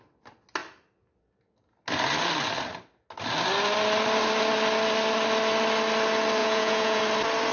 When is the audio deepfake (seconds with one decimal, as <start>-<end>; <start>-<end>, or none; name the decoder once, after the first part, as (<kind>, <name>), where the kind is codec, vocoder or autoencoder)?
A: 6.4-7.0 (vocoder, Vocos)